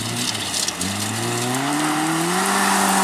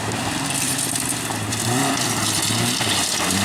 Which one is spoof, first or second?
second